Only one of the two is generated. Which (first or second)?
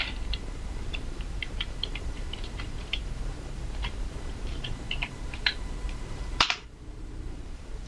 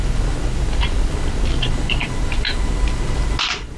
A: first